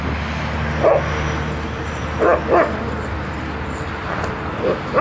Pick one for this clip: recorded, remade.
recorded